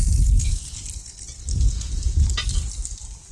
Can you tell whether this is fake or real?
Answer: real